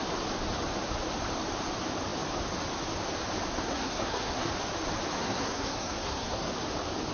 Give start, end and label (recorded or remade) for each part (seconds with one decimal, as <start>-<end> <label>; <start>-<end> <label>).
0.0-3.5 recorded; 3.5-4.5 remade; 4.5-5.2 recorded; 5.2-6.5 remade; 6.5-7.1 recorded